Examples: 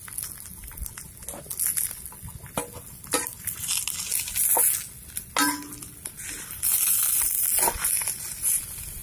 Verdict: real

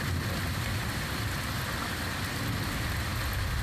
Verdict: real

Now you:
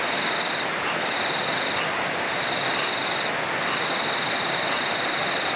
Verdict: real